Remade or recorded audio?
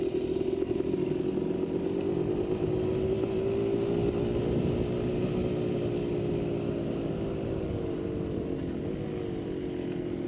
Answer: recorded